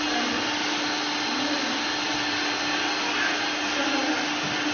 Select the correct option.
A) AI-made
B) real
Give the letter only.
B